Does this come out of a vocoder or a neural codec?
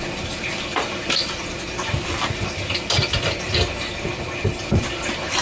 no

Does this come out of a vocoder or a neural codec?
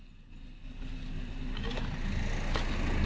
no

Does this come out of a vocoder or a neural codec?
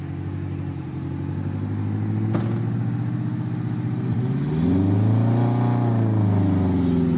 no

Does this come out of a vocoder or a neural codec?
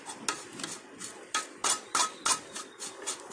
no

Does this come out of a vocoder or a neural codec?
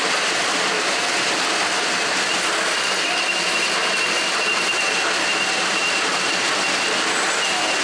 no